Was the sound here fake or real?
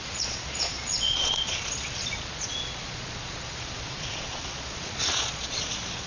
fake